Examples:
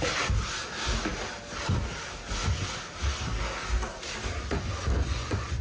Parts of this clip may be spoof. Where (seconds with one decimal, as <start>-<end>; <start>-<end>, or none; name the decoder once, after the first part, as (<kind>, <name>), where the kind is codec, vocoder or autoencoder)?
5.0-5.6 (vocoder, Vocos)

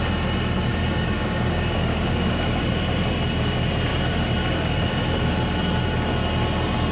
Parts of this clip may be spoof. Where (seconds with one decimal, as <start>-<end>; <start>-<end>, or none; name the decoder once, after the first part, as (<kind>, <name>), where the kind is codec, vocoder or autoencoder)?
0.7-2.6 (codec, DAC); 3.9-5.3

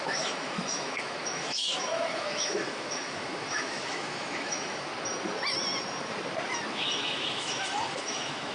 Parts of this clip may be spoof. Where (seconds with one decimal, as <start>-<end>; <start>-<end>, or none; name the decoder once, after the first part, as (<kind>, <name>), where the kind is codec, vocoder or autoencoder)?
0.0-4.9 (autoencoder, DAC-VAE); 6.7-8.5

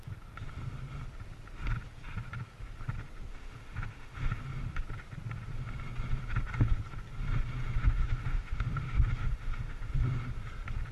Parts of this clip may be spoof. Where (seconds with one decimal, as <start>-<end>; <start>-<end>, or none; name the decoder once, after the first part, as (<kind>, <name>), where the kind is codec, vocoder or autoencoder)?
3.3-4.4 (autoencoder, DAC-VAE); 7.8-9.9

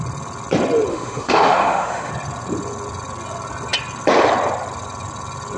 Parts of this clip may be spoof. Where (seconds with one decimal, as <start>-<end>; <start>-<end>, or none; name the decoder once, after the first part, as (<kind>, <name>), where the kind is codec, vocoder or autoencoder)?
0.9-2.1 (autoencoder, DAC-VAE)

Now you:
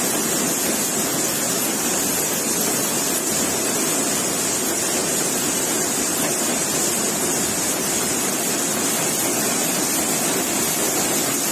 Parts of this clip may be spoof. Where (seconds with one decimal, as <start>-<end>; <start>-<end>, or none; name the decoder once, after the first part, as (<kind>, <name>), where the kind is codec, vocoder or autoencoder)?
5.0-8.9 (vocoder, BigVGAN v2)